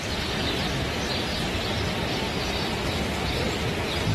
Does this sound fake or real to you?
real